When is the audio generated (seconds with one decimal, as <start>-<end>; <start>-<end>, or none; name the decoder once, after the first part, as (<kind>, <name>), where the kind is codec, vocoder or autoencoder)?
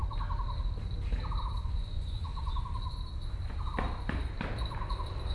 1.6-2.3 (vocoder, Vocos)